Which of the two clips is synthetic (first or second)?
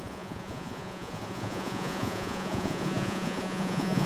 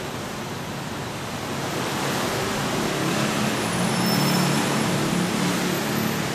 first